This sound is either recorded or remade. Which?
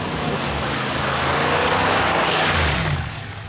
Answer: remade